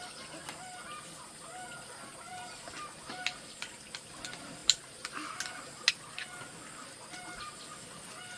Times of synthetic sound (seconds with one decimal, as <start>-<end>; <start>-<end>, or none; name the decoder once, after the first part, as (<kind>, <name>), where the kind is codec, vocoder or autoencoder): none